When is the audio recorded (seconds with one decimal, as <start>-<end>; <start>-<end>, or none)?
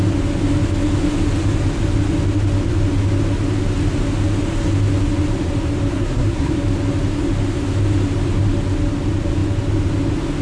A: 0.0-5.9; 6.5-10.4